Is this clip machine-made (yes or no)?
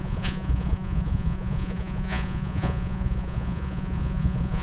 yes